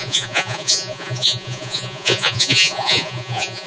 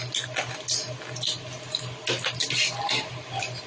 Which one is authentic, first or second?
second